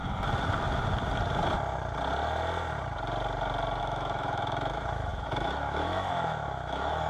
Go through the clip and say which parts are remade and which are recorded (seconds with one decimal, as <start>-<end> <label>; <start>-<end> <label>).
0.0-3.8 recorded; 3.8-7.1 remade